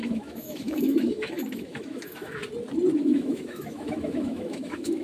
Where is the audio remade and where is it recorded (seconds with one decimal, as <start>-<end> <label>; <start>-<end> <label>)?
0.0-2.4 remade; 2.4-3.0 recorded; 3.0-5.0 remade